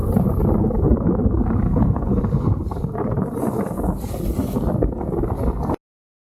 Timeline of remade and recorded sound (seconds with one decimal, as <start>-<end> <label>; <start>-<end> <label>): 0.0-3.4 remade; 3.4-6.2 recorded

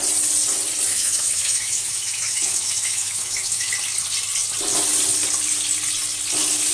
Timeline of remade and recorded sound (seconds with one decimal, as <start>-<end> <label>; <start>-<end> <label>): 0.0-0.9 recorded; 0.9-3.7 remade; 3.7-6.7 recorded

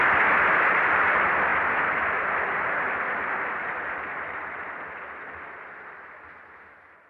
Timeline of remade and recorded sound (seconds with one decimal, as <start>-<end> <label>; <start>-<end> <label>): 0.0-7.1 recorded

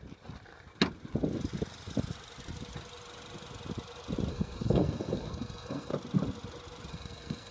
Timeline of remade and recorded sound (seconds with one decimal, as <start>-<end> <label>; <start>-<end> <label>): 0.0-4.3 recorded; 4.3-5.9 remade; 5.9-6.9 recorded; 6.9-7.5 remade